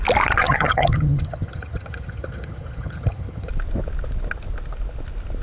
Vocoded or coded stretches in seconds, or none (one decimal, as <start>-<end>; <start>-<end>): 0.4-3.5